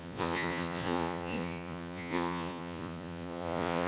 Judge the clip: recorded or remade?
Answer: remade